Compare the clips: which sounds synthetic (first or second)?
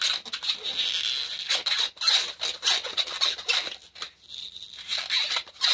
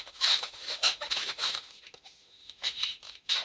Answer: second